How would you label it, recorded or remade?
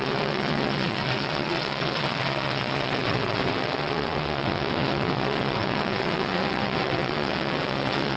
remade